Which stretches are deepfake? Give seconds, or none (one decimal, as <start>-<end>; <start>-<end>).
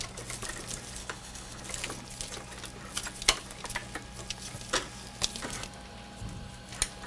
1.0-1.6